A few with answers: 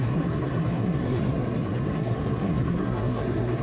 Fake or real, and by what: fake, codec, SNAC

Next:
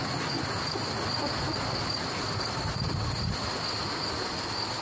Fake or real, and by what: real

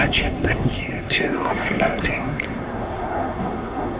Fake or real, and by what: fake, codec, SNAC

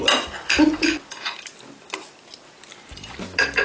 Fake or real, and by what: real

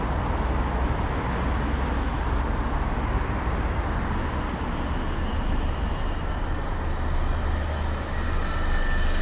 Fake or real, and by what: real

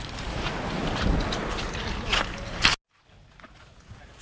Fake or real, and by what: real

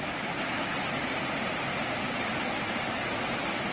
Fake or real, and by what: real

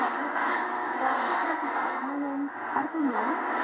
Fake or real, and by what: fake, codec, SNAC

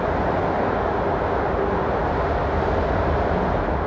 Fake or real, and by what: real